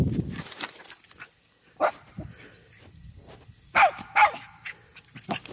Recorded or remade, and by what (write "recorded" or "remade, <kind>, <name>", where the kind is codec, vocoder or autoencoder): remade, vocoder, BigVGAN v2